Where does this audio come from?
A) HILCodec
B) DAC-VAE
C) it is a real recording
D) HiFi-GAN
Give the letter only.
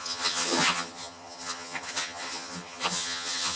D